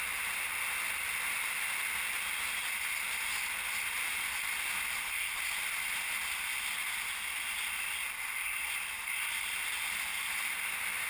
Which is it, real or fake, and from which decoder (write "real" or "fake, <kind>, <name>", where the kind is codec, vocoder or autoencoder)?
real